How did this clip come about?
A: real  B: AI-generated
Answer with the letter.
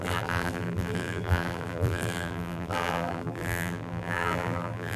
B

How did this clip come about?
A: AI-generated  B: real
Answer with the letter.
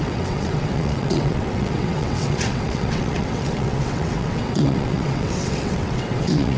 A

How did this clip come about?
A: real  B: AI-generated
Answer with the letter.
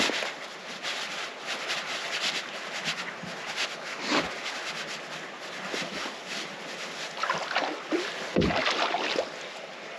A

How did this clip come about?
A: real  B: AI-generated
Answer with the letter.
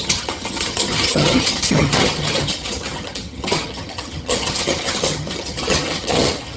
B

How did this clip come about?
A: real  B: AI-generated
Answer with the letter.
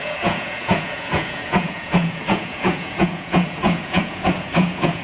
B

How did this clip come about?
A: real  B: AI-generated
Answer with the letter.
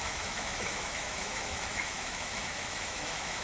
B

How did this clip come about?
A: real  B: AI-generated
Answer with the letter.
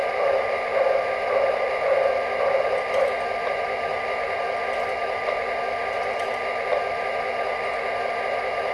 A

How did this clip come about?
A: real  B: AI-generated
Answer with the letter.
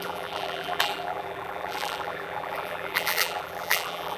B